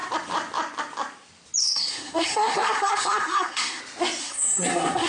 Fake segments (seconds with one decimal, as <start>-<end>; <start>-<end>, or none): 1.6-3.8; 4.2-5.1